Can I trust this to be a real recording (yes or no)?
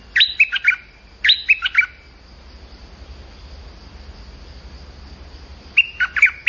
yes